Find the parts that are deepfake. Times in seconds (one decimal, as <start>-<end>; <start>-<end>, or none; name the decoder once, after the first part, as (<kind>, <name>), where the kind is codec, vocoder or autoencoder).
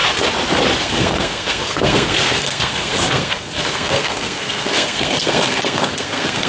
0.8-6.5 (codec, SNAC)